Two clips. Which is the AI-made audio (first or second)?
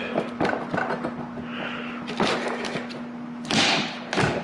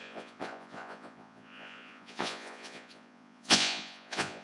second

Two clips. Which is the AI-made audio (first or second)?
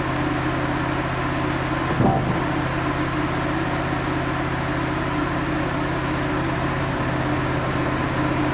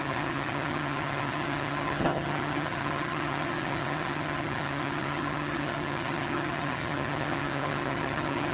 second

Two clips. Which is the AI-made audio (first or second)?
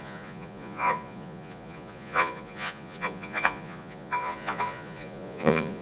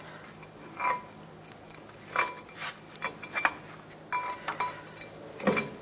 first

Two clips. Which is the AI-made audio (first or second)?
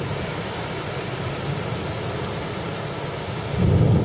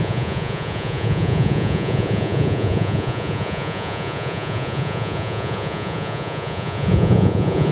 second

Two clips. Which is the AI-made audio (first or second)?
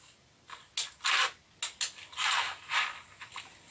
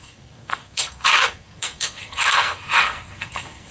second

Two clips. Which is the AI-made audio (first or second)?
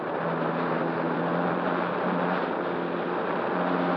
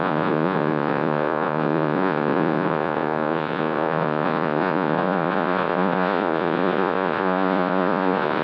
second